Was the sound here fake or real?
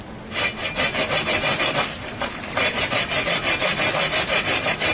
real